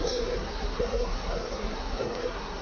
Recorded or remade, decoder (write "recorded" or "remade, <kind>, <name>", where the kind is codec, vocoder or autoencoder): remade, codec, SNAC